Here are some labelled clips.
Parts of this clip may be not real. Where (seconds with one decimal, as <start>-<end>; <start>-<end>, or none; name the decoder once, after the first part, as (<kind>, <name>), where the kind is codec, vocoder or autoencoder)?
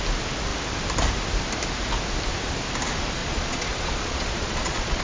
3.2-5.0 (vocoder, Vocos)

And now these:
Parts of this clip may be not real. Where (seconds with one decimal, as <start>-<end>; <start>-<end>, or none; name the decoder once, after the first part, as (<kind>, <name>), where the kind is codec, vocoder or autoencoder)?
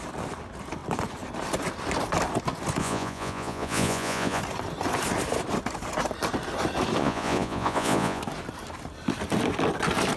2.8-4.4 (vocoder, Vocos); 7.0-8.2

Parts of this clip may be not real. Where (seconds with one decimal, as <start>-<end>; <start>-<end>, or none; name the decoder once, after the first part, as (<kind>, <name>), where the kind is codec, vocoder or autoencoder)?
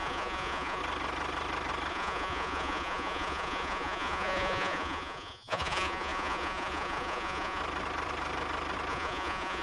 0.0-0.8 (vocoder, Vocos); 1.9-7.6; 8.9-9.6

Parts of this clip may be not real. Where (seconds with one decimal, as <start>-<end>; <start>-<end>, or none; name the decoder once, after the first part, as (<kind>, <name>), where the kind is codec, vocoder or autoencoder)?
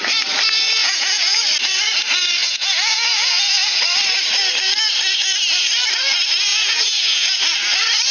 0.8-1.4 (vocoder, Vocos); 2.4-3.8; 6.5-7.4